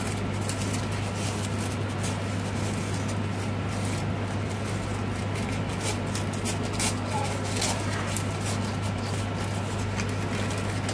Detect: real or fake real